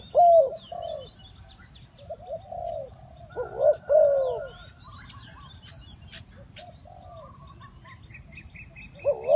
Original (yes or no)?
yes